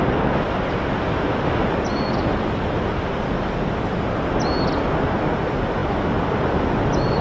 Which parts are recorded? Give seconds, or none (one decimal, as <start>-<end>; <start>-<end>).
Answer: 0.0-7.2

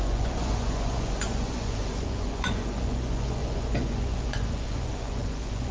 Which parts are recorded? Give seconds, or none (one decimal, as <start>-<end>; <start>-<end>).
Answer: none